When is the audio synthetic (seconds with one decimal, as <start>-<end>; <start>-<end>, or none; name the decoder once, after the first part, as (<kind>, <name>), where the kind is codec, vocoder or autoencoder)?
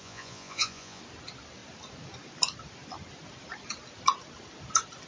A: 0.0-1.0 (vocoder, Vocos)